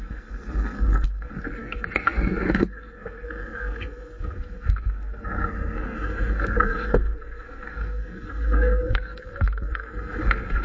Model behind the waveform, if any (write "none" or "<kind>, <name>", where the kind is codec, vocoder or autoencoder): codec, SNAC